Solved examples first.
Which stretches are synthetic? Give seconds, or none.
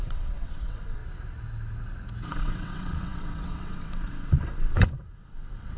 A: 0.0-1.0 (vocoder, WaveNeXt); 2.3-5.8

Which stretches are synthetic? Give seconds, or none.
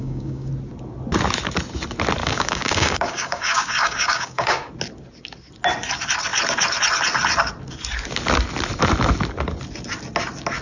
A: 0.0-0.5 (codec, DAC); 2.2-4.7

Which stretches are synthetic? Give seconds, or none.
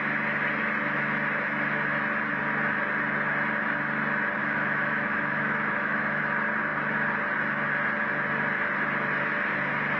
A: 4.4-6.2 (autoencoder, DAC-VAE)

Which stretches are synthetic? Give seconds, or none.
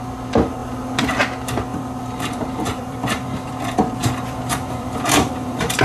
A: 1.7-3.5 (vocoder, BigVGAN v2); 4.0-5.8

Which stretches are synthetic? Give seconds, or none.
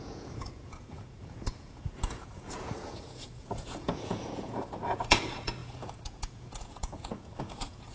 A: 0.0-7.9 (vocoder, Vocos)